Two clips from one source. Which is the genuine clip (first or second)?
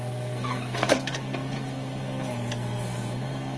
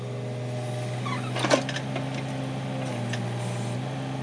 second